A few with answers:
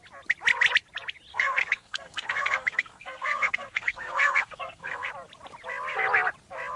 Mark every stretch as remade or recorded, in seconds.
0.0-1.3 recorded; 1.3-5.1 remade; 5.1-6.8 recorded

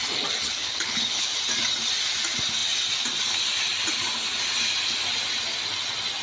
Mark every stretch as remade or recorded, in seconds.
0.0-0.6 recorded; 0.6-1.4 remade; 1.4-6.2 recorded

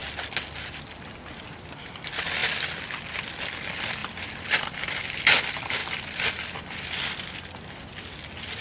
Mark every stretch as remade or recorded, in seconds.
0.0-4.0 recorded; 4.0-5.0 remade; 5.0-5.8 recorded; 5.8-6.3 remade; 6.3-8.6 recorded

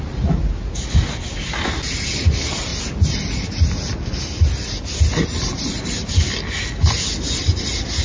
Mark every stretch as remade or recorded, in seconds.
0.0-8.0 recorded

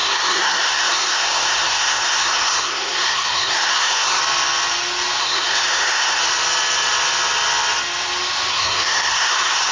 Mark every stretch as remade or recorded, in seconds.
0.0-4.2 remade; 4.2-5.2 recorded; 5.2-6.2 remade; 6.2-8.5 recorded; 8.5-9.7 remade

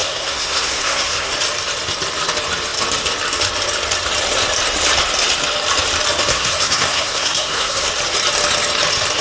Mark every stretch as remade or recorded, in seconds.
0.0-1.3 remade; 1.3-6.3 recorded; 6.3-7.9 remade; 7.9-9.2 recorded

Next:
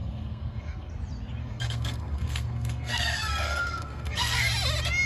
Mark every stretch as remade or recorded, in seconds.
0.0-0.9 remade; 0.9-1.4 recorded; 1.4-4.5 remade; 4.5-5.1 recorded